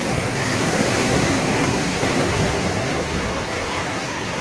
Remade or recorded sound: remade